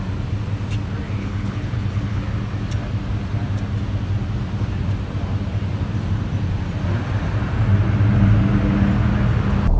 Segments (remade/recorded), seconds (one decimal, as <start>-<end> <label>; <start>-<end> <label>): 0.0-1.2 recorded; 1.2-2.2 remade; 2.2-9.8 recorded